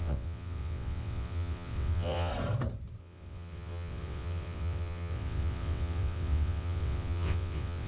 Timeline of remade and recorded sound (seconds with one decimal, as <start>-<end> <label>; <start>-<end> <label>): 0.0-2.3 remade; 2.3-3.0 recorded; 3.0-7.9 remade